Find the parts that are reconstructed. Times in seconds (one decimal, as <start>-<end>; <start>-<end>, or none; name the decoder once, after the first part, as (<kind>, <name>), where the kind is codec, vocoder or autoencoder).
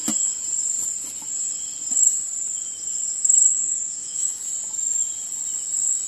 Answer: 3.5-4.5 (autoencoder, DAC-VAE)